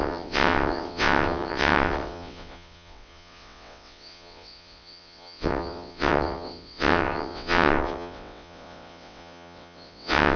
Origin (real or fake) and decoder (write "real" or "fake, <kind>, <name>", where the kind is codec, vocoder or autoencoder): fake, vocoder, WaveNeXt